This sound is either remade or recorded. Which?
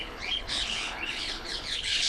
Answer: remade